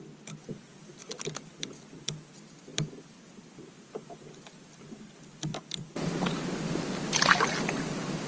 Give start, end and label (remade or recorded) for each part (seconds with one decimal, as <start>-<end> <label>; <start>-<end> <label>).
0.0-1.0 recorded; 1.0-2.0 remade; 2.0-2.7 recorded; 2.7-3.6 remade; 3.6-5.5 recorded; 5.5-6.4 remade; 6.4-8.3 recorded